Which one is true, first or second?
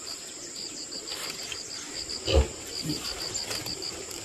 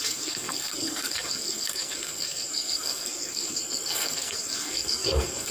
first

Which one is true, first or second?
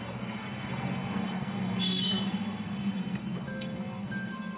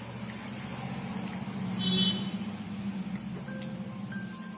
second